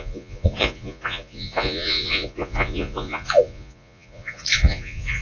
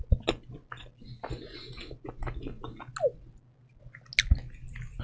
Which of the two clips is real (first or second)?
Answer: second